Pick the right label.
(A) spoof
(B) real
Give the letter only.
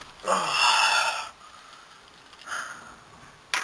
B